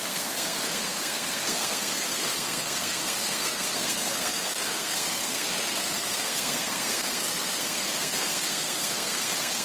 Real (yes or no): no